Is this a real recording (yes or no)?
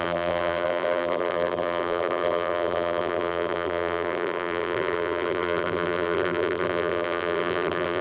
no